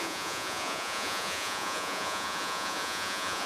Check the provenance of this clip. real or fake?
fake